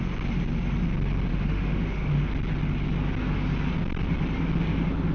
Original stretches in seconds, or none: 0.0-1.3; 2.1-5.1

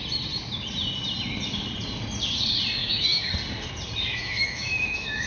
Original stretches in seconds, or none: 0.0-2.8; 3.3-4.1

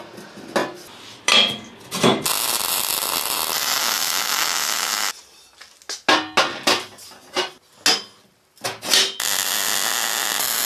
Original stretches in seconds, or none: 0.0-3.8; 5.1-10.7

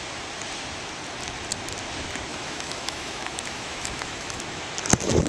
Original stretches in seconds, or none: 0.0-2.3; 4.6-5.3

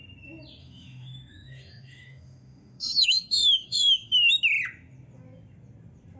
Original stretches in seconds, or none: 0.0-0.6; 4.3-6.2

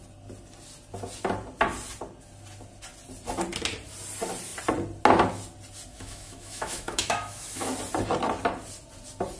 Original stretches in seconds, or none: 0.0-5.9; 7.7-9.4

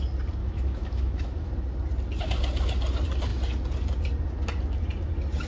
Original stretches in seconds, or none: 0.0-0.4; 1.5-5.5